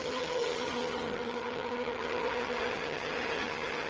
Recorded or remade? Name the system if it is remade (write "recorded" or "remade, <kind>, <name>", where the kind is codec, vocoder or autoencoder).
remade, vocoder, HiFi-GAN